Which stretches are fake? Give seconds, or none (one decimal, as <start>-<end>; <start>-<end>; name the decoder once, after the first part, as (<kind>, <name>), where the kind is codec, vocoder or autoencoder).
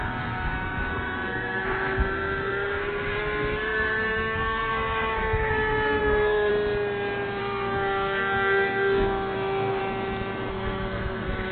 0.0-6.5 (codec, SNAC); 7.4-9.8; 10.5-11.5